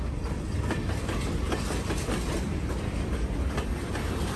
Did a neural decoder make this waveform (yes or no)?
no